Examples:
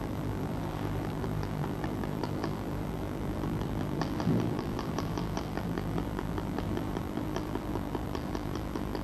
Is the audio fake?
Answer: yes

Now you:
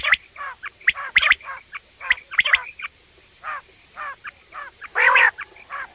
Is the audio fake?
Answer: yes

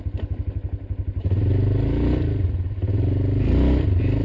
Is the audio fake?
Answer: no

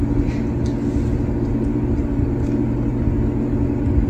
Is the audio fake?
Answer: no